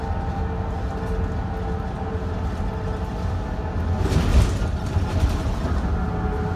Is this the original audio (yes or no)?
yes